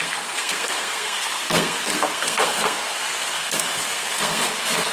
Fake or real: fake